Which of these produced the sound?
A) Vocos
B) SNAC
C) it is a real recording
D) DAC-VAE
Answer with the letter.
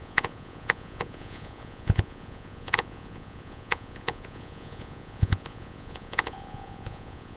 A